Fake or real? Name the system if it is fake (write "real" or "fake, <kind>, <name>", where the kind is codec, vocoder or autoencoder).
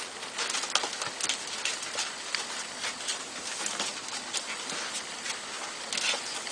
real